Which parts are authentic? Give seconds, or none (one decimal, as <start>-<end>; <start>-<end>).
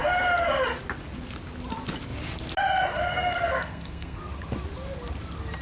0.0-3.1; 4.2-5.6